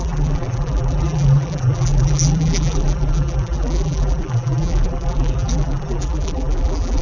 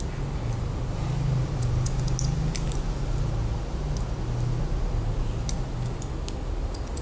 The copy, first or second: first